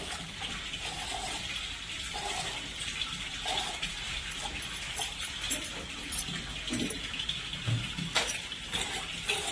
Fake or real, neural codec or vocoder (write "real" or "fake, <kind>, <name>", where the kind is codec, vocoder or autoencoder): real